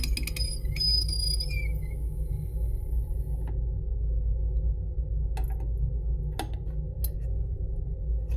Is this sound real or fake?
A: real